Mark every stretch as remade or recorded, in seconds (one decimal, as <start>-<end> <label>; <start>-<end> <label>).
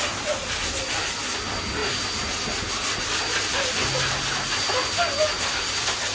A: 0.0-1.8 remade; 1.8-5.3 recorded; 5.3-6.1 remade